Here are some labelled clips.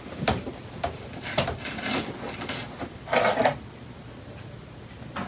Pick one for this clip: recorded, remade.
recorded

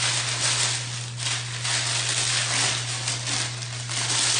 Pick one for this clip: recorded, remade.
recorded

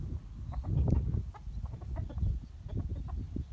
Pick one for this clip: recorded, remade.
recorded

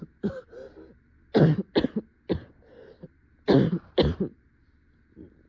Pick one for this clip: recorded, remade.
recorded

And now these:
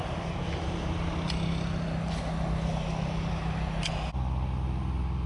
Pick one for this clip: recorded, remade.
recorded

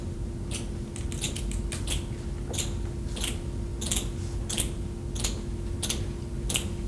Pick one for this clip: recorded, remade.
recorded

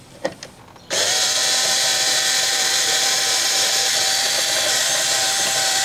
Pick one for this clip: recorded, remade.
remade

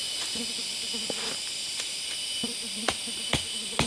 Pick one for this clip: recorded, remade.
recorded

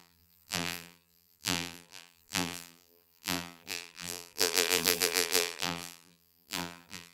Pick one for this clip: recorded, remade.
remade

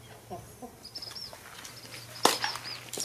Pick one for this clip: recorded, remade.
recorded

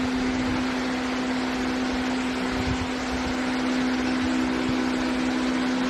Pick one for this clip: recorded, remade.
recorded